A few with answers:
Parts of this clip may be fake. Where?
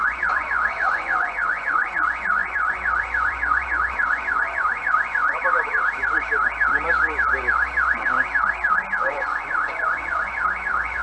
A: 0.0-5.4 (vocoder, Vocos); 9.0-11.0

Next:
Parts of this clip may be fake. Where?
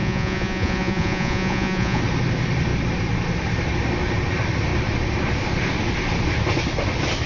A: 0.0-2.0 (vocoder, Vocos)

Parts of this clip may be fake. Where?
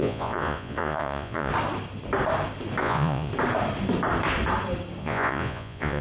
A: 0.0-1.5 (vocoder, Vocos); 2.8-3.3; 5.0-6.0